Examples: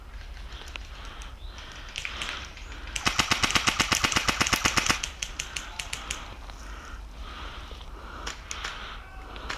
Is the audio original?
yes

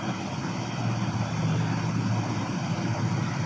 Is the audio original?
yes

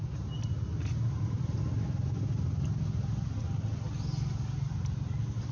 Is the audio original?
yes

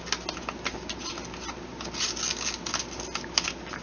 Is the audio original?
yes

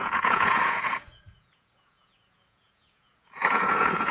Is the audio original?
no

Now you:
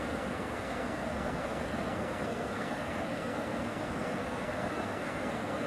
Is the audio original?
no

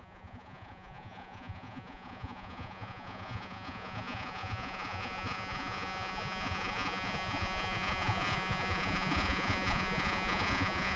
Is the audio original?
no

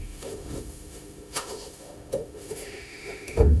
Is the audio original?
no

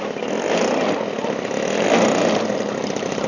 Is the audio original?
yes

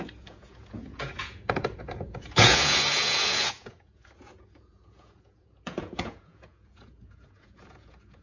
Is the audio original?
no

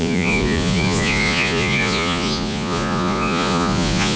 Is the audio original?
no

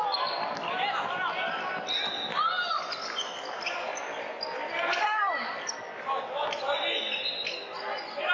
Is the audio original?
yes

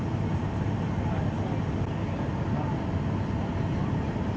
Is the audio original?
yes